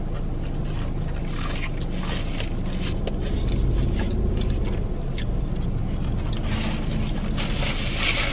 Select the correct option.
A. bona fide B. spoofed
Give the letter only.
A